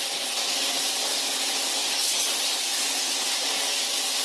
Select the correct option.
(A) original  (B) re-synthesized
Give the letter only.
A